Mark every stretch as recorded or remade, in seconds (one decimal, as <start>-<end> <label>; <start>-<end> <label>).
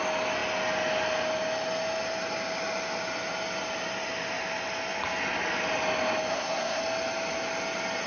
0.0-6.3 recorded; 6.3-6.8 remade; 6.8-8.1 recorded